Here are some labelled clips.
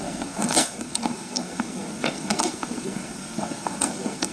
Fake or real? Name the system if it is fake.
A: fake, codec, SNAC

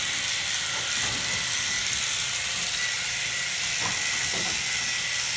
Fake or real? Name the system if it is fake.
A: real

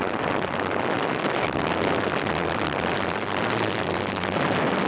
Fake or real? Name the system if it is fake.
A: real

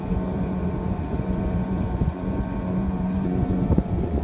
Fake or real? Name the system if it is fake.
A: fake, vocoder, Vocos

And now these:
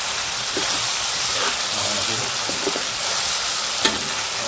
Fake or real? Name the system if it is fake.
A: real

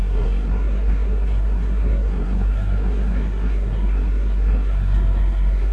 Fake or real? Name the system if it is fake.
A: fake, codec, SNAC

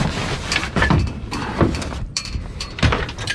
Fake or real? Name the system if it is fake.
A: fake, vocoder, BigVGAN v2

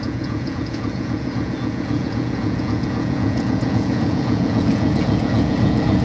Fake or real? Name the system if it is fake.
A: fake, vocoder, Vocos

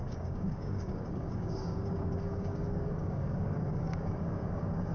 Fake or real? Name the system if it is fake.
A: fake, codec, DAC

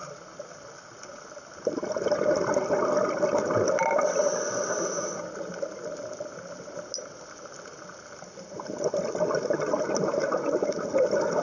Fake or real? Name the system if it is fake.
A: real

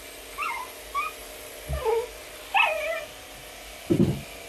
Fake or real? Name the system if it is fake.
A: real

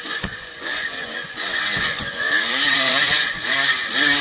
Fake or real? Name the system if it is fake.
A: fake, vocoder, Vocos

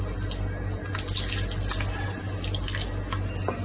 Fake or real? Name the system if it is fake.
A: real